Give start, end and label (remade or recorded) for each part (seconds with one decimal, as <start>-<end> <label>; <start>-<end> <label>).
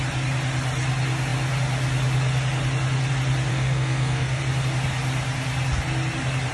0.0-3.5 recorded; 3.5-4.4 remade; 4.4-6.5 recorded